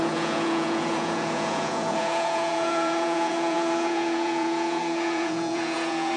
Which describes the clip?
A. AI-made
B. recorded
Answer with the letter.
A